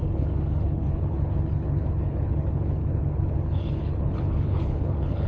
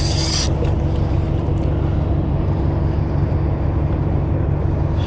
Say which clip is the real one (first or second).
second